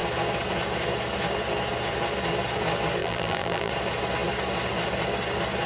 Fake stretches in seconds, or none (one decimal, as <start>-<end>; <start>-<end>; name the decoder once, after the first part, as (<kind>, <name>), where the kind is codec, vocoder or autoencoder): 3.0-3.7 (vocoder, BigVGAN v2)